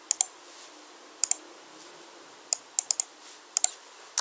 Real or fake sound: real